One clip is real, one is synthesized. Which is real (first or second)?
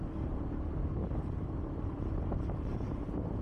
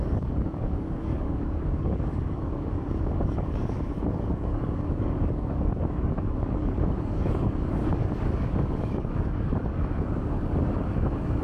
first